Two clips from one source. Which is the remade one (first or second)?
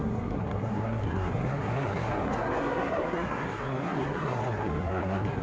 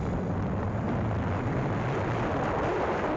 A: first